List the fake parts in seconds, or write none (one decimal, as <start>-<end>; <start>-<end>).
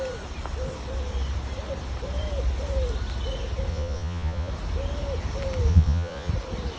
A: 3.7-4.5; 5.7-6.3